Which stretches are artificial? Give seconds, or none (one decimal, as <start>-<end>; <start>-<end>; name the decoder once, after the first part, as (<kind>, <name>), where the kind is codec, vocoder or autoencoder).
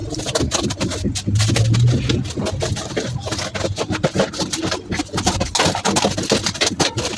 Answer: none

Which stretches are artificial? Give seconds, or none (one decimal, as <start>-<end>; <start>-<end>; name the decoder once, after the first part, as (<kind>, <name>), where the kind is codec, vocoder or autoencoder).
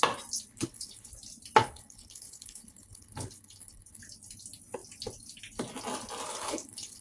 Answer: 0.5-1.1 (codec, HILCodec); 1.6-4.0; 6.3-7.0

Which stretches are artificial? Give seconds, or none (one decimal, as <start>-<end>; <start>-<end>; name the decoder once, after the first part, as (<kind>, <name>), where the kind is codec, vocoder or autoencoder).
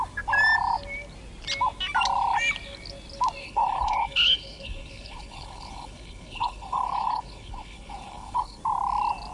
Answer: 3.4-8.6 (codec, HILCodec)